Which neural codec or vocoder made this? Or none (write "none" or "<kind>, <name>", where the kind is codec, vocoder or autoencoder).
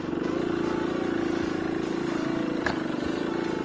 none